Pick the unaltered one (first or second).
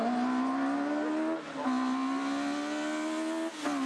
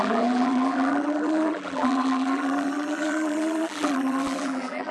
first